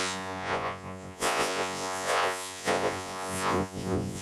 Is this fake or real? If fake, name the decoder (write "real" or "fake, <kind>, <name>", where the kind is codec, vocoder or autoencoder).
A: fake, vocoder, Vocos